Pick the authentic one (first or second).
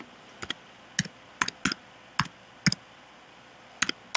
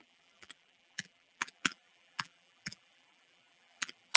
first